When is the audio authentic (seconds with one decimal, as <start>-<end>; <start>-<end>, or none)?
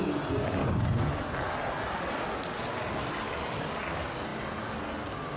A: 0.0-5.4